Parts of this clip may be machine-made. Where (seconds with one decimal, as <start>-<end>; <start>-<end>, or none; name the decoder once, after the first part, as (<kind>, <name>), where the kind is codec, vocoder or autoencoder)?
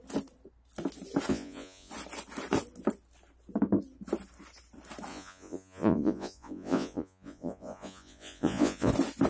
1.3-1.9 (vocoder, Vocos); 5.1-8.9